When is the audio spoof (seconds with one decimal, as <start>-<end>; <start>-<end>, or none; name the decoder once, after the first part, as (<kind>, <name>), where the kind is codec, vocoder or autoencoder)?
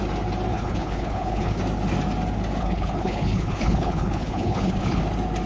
0.5-1.6 (codec, HILCodec); 2.6-5.0